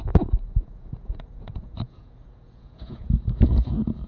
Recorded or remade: remade